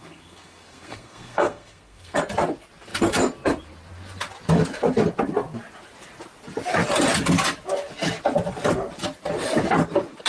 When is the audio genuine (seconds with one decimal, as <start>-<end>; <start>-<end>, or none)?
2.2-10.3